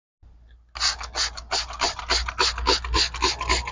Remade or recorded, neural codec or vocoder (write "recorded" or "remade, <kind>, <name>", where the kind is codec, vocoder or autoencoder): recorded